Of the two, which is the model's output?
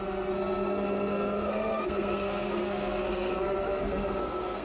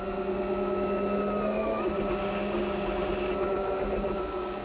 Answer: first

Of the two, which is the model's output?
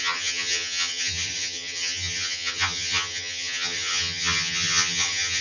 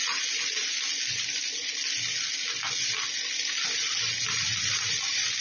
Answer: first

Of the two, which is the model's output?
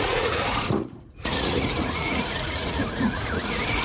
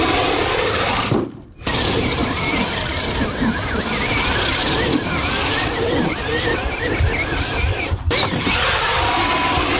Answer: first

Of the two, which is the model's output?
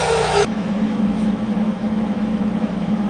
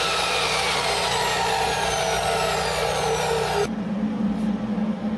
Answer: first